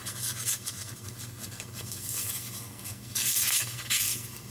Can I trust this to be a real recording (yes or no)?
no